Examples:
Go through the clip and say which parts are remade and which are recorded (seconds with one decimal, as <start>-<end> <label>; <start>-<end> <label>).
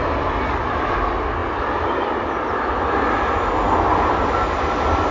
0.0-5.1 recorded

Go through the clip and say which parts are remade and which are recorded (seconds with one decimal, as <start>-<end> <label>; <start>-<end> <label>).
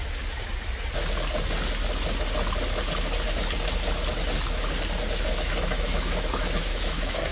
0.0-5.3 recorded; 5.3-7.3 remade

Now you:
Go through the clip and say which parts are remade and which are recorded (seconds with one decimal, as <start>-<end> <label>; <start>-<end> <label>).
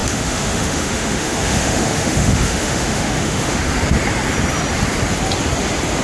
0.0-3.6 remade; 3.6-6.0 recorded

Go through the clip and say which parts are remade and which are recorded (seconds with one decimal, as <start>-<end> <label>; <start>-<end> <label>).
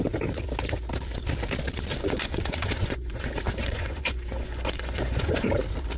0.0-1.9 recorded; 1.9-5.5 remade; 5.5-6.0 recorded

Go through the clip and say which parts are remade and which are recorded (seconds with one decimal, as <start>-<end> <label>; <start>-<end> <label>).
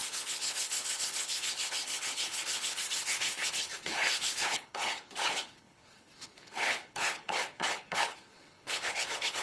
0.0-9.4 remade